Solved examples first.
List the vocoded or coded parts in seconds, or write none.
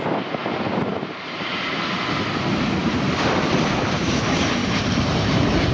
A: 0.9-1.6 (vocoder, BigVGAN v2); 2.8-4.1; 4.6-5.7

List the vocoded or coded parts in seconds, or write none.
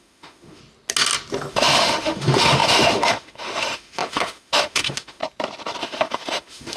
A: 0.0-0.6 (autoencoder, DAC-VAE); 1.5-5.2; 5.8-6.8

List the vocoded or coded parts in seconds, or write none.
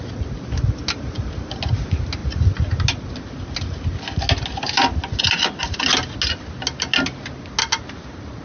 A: none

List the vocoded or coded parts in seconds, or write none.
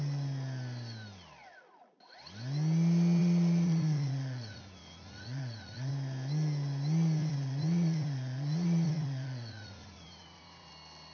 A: 3.2-5.9 (vocoder, Vocos); 7.2-10.7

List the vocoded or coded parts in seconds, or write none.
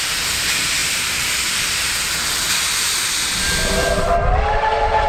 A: 0.8-3.9 (vocoder, BigVGAN v2)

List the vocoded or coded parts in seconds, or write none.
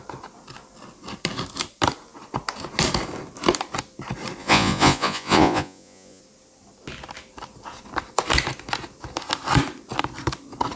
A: 4.4-6.2 (vocoder, Vocos)